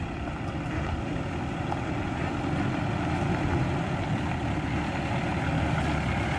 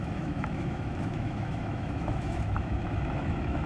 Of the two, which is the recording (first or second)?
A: first